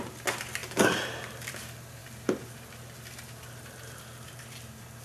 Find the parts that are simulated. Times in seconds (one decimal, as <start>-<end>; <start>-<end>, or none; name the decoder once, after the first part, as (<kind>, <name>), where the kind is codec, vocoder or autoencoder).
none